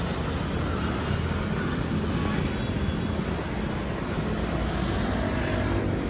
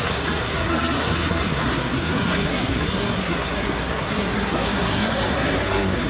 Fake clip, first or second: second